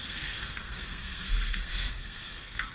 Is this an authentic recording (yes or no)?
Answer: no